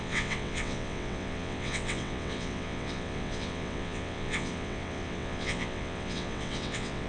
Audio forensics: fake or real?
fake